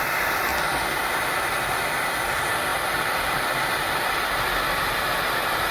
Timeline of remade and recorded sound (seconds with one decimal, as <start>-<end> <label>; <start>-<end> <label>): 0.0-5.7 recorded